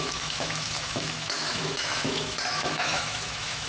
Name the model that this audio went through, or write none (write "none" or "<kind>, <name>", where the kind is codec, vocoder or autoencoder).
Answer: autoencoder, DAC-VAE